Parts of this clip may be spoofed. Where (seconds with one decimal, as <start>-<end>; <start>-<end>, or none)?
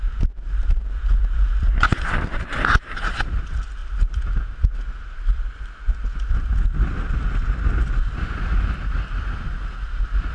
none